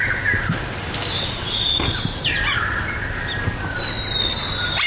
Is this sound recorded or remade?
recorded